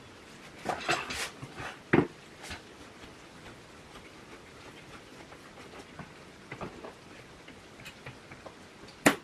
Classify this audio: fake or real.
real